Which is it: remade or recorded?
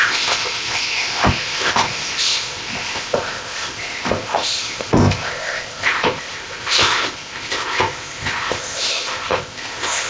remade